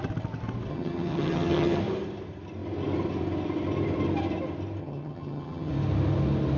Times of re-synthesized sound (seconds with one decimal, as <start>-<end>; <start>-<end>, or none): 0.7-1.8; 4.8-5.7